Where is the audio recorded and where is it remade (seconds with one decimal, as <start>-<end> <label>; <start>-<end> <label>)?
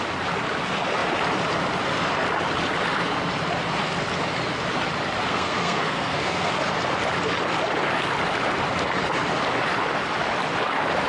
0.0-5.2 recorded; 5.2-6.5 remade; 6.5-11.1 recorded